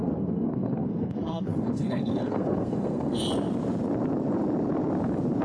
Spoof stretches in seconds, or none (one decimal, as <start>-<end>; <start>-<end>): 0.0-3.2